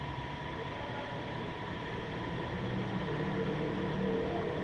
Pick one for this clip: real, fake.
real